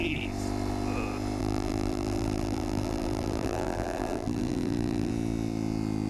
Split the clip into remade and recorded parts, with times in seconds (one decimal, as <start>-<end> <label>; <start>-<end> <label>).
0.0-1.4 recorded; 1.4-5.1 remade; 5.1-6.1 recorded